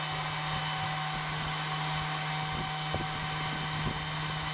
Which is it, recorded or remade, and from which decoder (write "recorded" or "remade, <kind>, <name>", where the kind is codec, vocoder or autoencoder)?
recorded